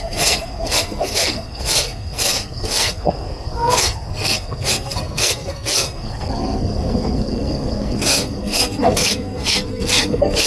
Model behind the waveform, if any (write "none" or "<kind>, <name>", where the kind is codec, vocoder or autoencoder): codec, SNAC